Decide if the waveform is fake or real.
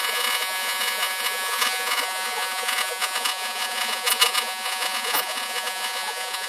fake